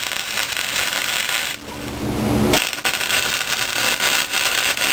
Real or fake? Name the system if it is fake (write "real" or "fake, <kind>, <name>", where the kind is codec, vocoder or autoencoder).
real